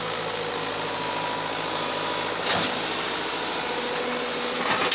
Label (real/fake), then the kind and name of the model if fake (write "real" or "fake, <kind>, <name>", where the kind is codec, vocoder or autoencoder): real